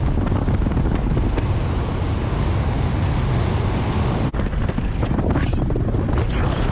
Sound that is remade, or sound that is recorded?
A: recorded